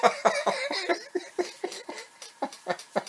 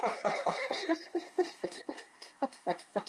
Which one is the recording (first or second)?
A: first